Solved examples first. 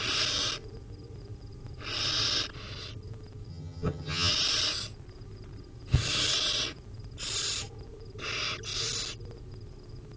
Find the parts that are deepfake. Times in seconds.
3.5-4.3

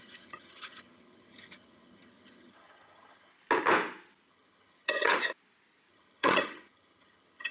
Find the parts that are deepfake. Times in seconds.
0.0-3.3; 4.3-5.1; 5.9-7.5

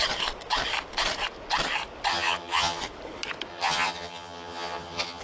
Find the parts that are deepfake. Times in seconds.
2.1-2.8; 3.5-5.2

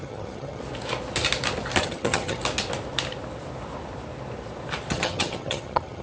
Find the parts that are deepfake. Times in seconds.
0.0-0.6; 1.8-2.4; 4.9-6.0

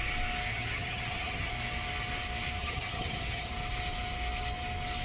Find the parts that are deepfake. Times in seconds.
0.5-1.5; 2.6-3.5

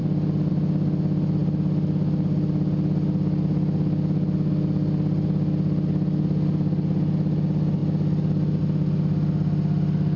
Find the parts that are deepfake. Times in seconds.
none

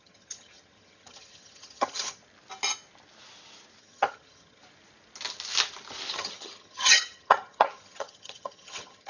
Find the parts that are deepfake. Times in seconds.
0.0-2.2; 3.8-4.6; 6.1-9.1